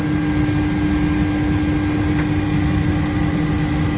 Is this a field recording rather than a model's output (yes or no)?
yes